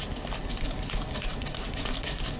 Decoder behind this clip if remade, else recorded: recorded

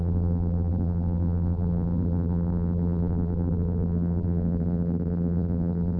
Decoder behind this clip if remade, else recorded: remade, vocoder, BigVGAN v2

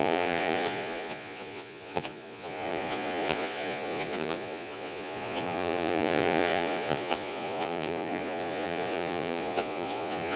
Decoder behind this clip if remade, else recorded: remade, vocoder, Vocos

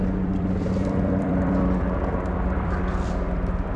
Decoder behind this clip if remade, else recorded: remade, vocoder, BigVGAN v2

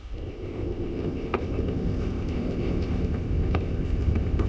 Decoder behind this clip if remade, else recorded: remade, codec, ZipCodec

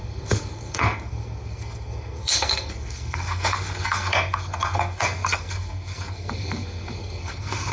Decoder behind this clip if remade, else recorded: remade, codec, SNAC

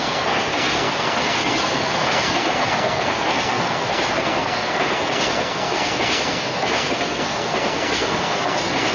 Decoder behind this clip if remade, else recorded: remade, codec, SNAC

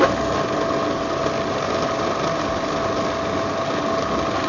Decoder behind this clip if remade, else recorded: recorded